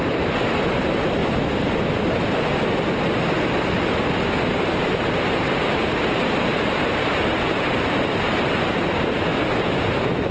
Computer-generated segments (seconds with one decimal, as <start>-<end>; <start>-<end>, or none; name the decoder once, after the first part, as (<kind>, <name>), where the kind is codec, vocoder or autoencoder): 0.0-1.2 (vocoder, BigVGAN v2); 4.9-9.3